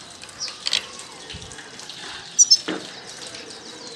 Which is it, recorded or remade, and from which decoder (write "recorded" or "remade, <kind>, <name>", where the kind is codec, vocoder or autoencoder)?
recorded